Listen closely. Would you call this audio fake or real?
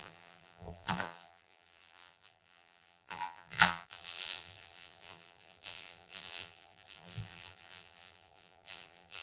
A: fake